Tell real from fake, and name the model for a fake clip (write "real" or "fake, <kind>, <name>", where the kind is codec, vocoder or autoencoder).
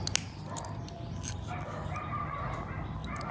real